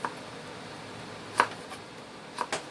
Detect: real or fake real